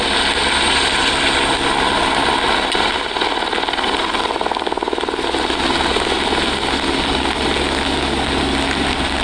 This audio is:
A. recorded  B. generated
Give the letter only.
A